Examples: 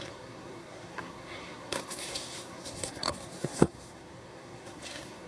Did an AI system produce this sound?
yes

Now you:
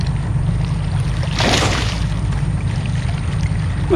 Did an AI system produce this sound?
no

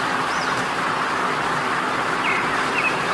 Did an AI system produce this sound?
no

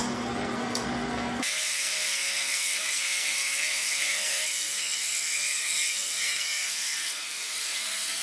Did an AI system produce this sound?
yes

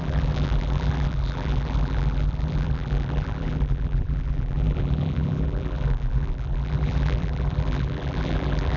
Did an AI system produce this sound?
yes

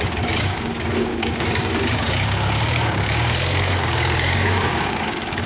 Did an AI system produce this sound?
yes